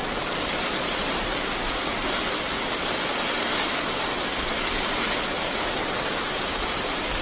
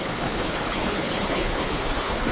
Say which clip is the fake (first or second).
second